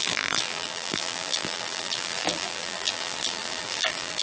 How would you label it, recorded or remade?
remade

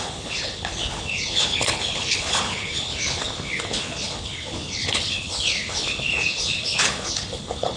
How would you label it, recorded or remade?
remade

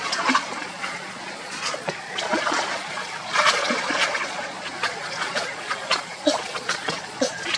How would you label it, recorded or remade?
remade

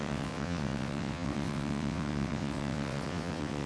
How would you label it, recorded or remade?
remade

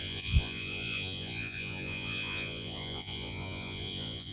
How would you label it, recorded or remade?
remade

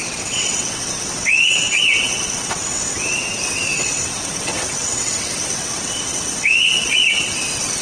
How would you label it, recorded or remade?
remade